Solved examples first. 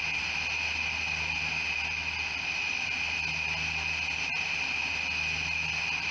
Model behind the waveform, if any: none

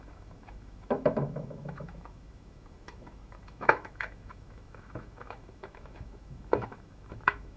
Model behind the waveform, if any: autoencoder, DAC-VAE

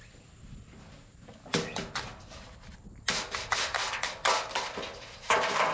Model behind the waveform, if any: none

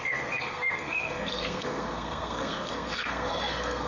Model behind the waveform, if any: codec, SNAC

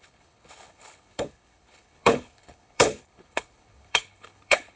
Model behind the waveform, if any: codec, HILCodec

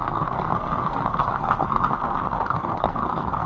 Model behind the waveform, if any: codec, SNAC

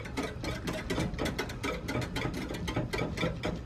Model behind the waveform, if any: none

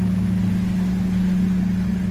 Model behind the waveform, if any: none